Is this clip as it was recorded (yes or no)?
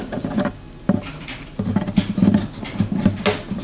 yes